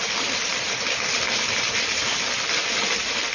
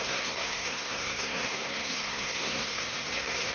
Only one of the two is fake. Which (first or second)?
second